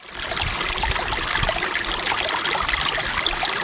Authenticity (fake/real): real